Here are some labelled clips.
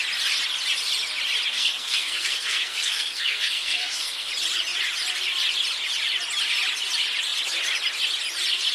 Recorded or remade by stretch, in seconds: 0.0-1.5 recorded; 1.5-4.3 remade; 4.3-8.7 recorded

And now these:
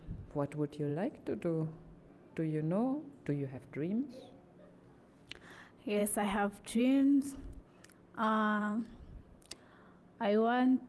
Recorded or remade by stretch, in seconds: 0.0-0.9 recorded; 0.9-4.6 remade; 4.6-6.0 recorded; 6.0-6.8 remade; 6.8-8.6 recorded; 8.6-9.9 remade; 9.9-10.9 recorded